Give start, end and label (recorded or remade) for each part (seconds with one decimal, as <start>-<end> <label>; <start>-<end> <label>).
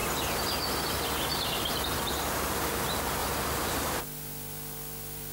0.0-3.2 recorded; 3.2-4.0 remade; 4.0-5.3 recorded